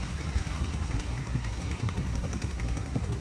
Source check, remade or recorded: remade